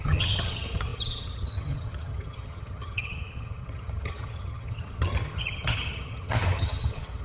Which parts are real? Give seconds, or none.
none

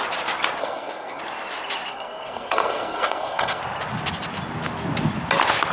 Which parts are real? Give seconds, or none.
0.0-0.6; 1.2-1.9; 3.6-5.7

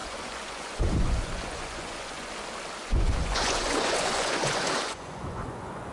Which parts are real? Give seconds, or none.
2.3-2.8

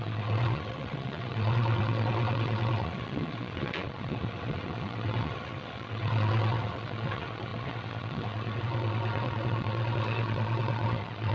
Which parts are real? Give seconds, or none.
none